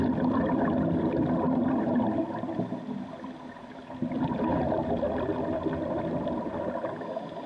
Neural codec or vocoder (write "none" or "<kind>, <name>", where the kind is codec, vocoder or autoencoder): none